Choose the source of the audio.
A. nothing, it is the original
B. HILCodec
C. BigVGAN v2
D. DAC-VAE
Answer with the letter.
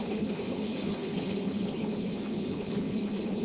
B